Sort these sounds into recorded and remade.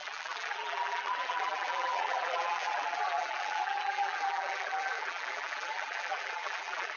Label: remade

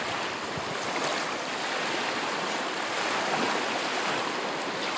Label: recorded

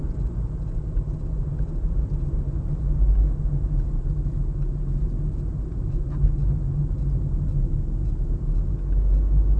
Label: recorded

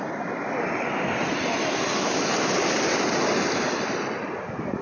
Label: recorded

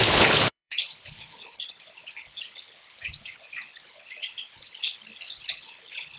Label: remade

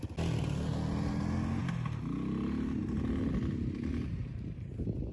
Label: recorded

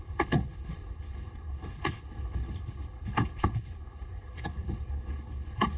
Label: remade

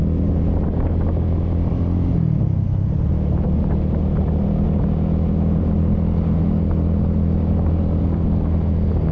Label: recorded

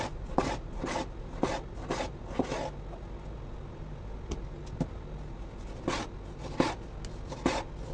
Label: recorded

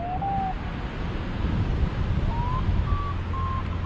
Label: recorded